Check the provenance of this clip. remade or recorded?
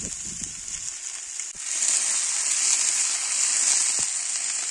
recorded